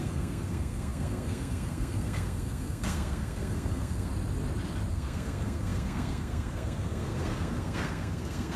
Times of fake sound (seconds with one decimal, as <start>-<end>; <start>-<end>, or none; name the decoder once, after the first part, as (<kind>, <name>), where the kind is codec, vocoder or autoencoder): 0.0-4.1 (codec, SNAC); 4.9-8.6